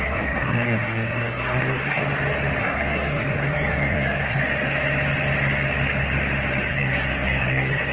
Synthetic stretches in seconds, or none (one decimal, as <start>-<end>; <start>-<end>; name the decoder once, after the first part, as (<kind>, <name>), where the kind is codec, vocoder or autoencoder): 0.0-2.0 (codec, SNAC); 2.6-4.4; 6.7-7.9